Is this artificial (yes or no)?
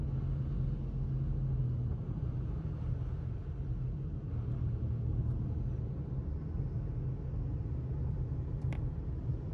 no